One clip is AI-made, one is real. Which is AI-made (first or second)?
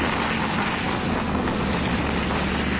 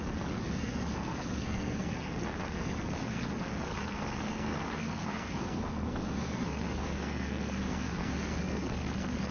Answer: second